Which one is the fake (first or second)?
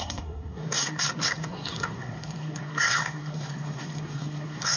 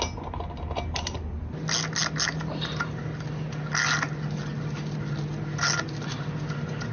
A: first